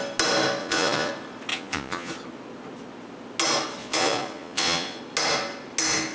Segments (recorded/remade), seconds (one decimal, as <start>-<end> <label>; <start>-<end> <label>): 0.0-0.6 recorded; 0.6-1.1 remade; 1.1-1.5 recorded; 1.5-2.1 remade; 2.1-3.8 recorded; 3.8-5.0 remade; 5.0-6.1 recorded